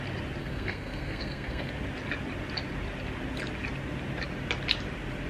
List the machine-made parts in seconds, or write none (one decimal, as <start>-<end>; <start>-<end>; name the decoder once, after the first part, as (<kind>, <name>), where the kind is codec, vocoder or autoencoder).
0.4-1.7 (codec, SNAC)